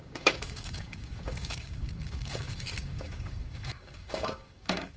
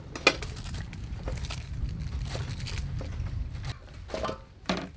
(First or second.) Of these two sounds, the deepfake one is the first